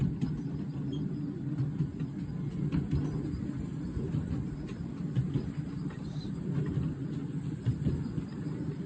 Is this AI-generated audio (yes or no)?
no